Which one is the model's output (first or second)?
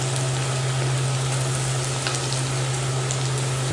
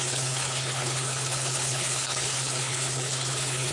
second